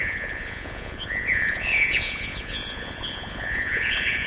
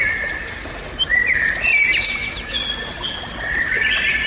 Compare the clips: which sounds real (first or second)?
second